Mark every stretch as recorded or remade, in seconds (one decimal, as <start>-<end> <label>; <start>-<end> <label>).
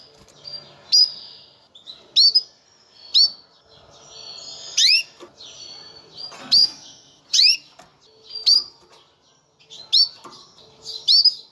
0.0-6.6 recorded; 6.6-7.2 remade; 7.2-11.5 recorded